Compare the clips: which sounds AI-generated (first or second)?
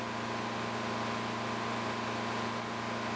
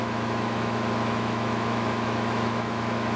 second